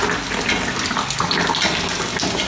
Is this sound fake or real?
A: real